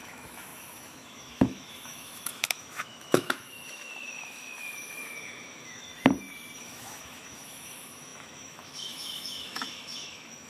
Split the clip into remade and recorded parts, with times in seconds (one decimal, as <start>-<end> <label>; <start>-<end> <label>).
0.0-5.9 remade; 5.9-6.6 recorded; 6.6-10.5 remade

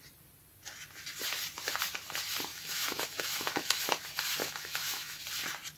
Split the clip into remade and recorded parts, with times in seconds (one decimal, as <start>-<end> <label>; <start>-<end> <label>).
0.0-2.5 recorded; 2.5-3.8 remade; 3.8-4.4 recorded; 4.4-5.2 remade; 5.2-5.8 recorded